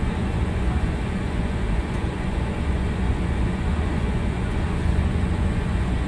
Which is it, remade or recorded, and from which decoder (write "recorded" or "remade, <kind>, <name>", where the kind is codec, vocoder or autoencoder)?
remade, vocoder, Vocos